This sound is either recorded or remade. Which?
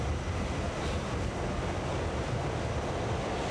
recorded